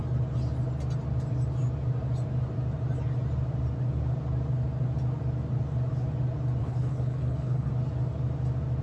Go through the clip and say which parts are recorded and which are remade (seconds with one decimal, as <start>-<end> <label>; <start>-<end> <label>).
0.0-6.6 recorded; 6.6-7.7 remade; 7.7-8.8 recorded